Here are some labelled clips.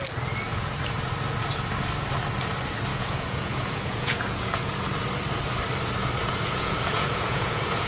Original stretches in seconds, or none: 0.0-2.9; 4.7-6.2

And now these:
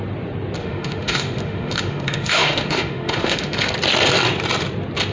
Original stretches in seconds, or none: 0.0-0.6; 3.7-5.1